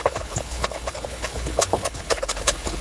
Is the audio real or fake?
fake